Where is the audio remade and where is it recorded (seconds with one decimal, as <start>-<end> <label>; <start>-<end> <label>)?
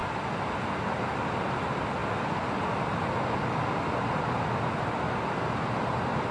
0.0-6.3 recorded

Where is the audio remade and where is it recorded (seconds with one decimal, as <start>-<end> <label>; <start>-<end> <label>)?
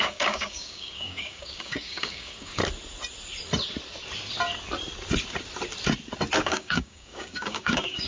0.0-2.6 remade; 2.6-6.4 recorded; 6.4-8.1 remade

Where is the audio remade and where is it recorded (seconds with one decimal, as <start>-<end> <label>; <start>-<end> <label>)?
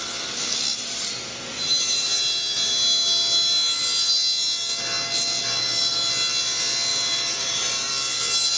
0.0-0.7 recorded; 0.7-2.6 remade; 2.6-6.9 recorded; 6.9-7.9 remade; 7.9-8.6 recorded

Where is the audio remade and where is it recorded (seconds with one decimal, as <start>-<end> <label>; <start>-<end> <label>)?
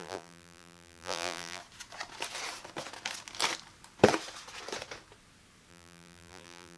0.0-1.6 remade; 1.6-5.7 recorded; 5.7-6.8 remade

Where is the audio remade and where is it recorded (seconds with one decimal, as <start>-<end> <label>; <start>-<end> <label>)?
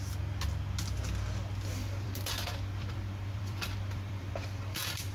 0.0-1.7 recorded; 1.7-5.1 remade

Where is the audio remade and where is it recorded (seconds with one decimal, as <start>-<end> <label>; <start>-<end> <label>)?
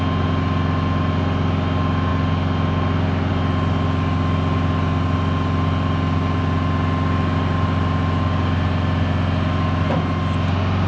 0.0-10.9 recorded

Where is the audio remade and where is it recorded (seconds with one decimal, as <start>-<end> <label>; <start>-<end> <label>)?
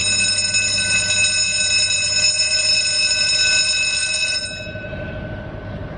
0.0-4.0 recorded; 4.0-5.1 remade; 5.1-6.0 recorded